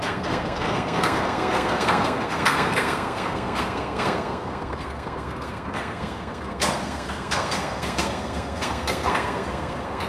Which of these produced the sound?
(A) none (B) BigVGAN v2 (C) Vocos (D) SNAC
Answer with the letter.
D